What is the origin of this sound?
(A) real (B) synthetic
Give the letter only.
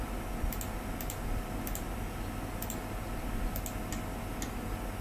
A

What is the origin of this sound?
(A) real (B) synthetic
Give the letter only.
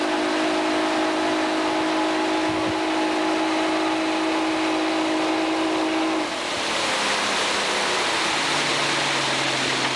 A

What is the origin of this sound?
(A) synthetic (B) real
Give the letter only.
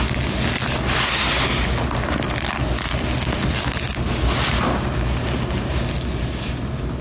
B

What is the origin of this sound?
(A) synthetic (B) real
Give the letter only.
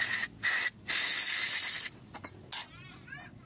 B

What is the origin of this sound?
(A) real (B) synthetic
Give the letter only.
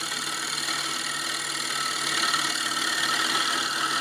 A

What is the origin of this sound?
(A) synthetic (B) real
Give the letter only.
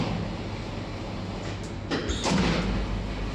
B